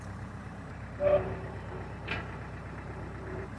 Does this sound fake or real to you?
fake